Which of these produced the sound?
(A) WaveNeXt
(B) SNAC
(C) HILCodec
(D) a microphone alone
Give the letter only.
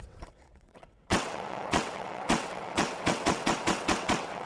A